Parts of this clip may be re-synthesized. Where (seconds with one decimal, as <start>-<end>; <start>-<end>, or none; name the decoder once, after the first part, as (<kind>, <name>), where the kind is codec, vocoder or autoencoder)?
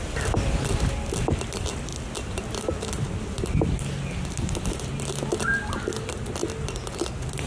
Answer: none